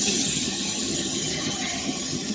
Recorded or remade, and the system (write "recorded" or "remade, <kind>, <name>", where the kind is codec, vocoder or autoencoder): remade, vocoder, HiFi-GAN